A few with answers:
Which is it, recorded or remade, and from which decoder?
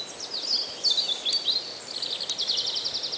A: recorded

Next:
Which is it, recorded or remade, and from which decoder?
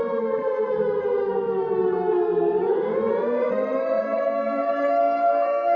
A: remade, codec, SNAC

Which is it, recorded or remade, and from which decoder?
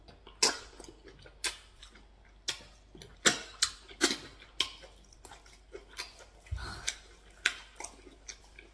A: recorded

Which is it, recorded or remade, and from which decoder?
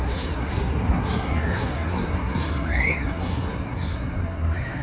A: remade, codec, SNAC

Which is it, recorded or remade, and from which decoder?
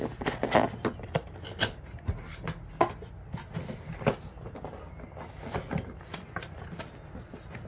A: recorded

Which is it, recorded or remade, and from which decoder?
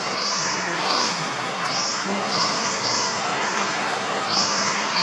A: remade, codec, SNAC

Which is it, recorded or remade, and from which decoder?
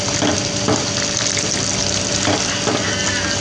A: recorded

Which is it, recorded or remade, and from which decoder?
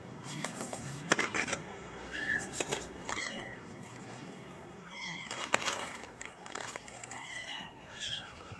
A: remade, codec, SNAC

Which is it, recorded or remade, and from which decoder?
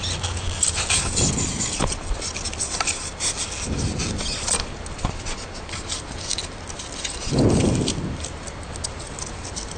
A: recorded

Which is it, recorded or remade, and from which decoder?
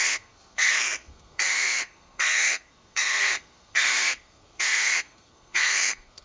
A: remade, codec, SNAC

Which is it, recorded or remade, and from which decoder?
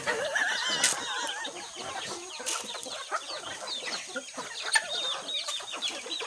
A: recorded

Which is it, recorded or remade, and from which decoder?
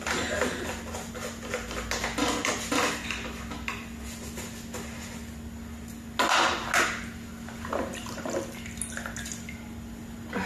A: recorded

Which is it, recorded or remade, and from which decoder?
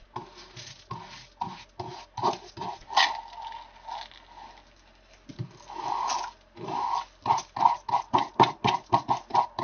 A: recorded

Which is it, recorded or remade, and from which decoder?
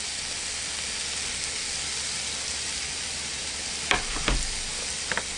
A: recorded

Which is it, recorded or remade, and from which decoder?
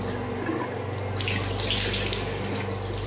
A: recorded